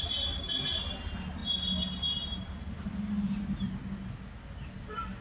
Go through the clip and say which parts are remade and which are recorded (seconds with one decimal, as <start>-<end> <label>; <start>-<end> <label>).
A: 0.0-5.2 recorded

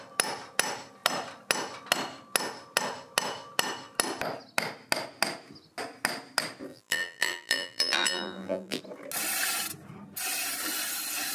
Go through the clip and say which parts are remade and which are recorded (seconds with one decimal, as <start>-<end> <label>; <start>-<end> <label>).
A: 0.0-6.7 recorded; 6.7-8.8 remade; 8.8-11.3 recorded

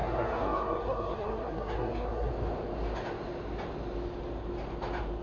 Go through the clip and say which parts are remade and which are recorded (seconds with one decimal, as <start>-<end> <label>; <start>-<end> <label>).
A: 0.0-2.3 remade; 2.3-5.2 recorded

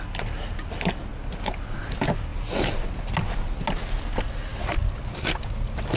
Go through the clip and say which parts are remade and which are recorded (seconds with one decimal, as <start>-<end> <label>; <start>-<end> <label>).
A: 0.0-6.0 recorded